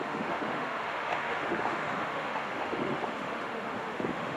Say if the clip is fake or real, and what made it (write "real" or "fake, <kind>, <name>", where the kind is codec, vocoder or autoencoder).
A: fake, autoencoder, DAC-VAE